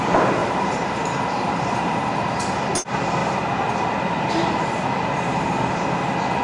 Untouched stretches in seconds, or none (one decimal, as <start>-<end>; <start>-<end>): 0.0-0.4; 2.6-3.2; 5.6-6.4